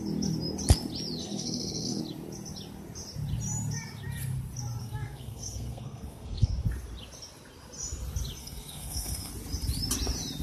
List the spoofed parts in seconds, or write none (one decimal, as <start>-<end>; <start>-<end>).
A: 1.2-2.0; 4.8-6.5; 8.4-9.3